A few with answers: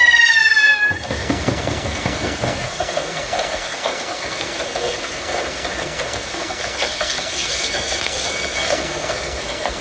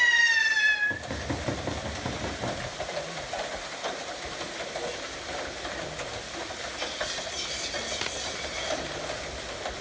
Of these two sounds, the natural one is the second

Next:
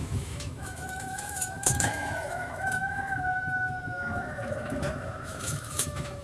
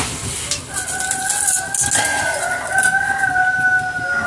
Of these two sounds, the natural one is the second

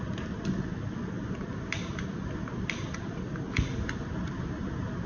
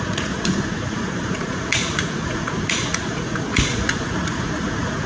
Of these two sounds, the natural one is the first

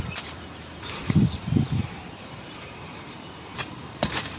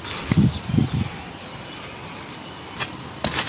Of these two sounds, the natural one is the second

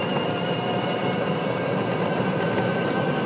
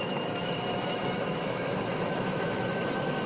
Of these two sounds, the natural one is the first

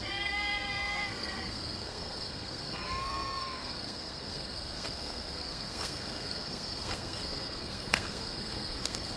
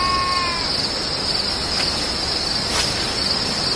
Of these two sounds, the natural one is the second